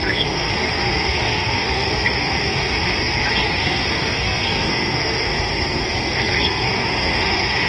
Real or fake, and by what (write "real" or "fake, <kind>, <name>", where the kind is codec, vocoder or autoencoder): fake, codec, SNAC